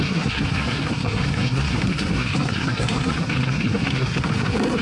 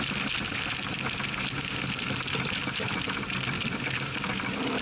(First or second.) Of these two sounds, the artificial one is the first